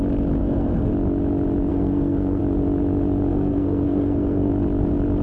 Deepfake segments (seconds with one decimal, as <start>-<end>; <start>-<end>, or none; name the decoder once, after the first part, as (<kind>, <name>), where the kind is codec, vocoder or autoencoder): 0.4-0.9 (codec, SNAC); 1.7-2.4; 3.3-4.5

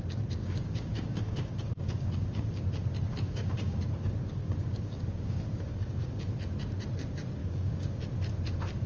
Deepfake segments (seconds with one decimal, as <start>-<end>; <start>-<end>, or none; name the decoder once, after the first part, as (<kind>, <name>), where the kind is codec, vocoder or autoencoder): 0.4-2.6 (codec, DAC); 3.1-3.8; 4.4-6.2; 7.4-8.0

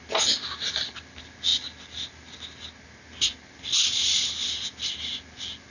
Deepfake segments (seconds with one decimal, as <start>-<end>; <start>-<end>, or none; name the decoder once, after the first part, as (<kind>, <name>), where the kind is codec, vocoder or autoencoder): none